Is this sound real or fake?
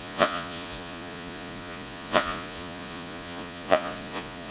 fake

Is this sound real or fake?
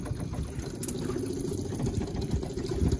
real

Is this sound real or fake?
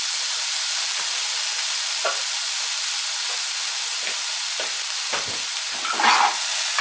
real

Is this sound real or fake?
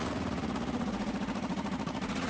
fake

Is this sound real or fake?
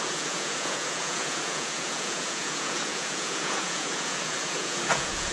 fake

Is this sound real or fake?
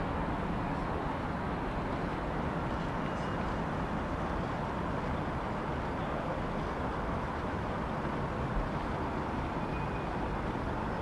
real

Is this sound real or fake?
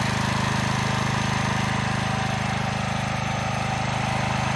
real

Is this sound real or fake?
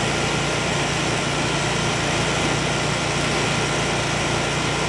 real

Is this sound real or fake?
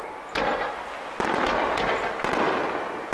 real